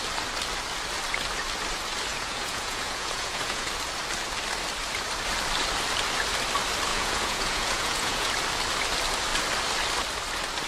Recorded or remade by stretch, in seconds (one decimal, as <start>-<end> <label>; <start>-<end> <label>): 0.0-2.1 recorded; 2.1-3.7 remade; 3.7-6.9 recorded; 6.9-8.3 remade; 8.3-10.7 recorded